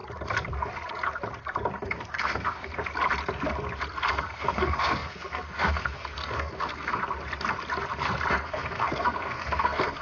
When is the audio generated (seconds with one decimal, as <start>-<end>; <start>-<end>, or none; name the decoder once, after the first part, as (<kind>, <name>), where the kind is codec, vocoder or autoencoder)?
1.8-2.7 (codec, SNAC); 4.1-7.0; 8.3-10.0